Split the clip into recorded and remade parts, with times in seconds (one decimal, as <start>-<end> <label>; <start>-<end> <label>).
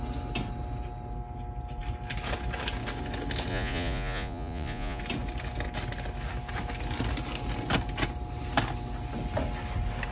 0.0-3.5 recorded; 3.5-5.0 remade; 5.0-10.1 recorded